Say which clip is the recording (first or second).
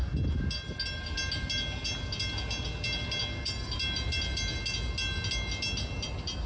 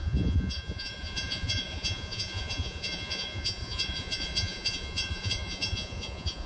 first